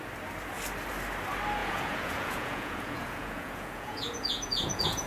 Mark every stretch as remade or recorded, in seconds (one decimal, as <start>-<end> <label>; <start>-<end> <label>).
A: 0.0-1.6 recorded; 1.6-5.1 remade